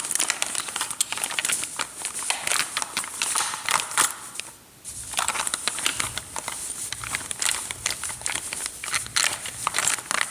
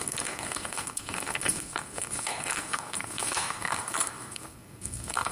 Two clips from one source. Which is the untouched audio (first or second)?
first